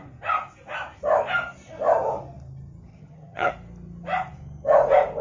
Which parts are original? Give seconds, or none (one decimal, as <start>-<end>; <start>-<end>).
0.0-2.9; 3.5-5.2